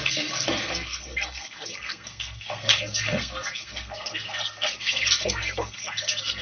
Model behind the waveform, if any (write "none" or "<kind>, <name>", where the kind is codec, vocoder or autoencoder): codec, SNAC